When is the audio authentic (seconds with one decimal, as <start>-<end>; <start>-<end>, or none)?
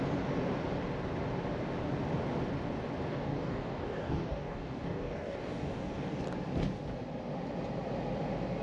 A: 0.0-3.1; 6.2-8.6